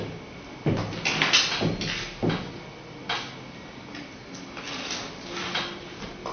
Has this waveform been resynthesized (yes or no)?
no